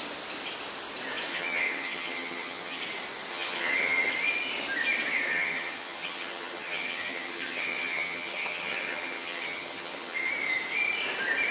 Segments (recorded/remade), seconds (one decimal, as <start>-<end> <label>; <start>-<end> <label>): 0.0-1.3 recorded; 1.3-2.8 remade; 2.8-3.3 recorded; 3.3-4.1 remade; 4.1-5.3 recorded; 5.3-10.3 remade; 10.3-11.5 recorded